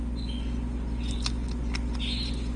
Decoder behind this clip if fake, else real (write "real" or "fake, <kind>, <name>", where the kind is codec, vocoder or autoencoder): real